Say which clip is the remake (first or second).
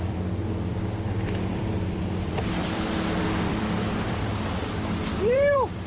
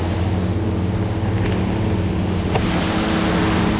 first